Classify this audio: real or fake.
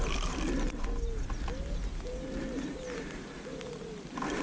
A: real